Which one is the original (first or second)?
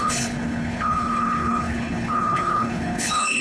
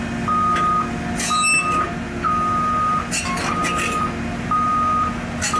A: second